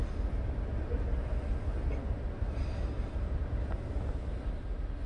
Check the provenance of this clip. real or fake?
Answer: real